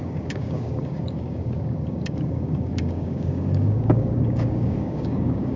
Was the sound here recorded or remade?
remade